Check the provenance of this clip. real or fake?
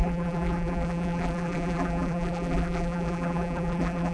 fake